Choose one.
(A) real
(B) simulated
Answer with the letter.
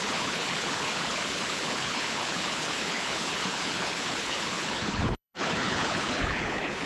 B